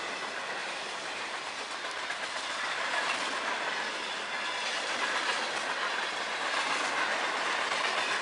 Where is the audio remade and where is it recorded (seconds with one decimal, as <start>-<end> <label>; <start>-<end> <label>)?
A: 0.0-0.6 recorded; 0.6-4.2 remade; 4.2-8.2 recorded